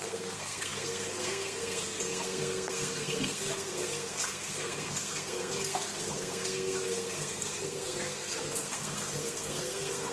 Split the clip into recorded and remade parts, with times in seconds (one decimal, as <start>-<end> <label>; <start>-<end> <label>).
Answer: 0.0-10.1 remade